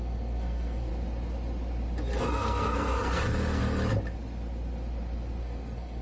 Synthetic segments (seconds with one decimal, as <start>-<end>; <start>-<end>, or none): 0.0-0.9; 2.2-3.6; 5.4-6.0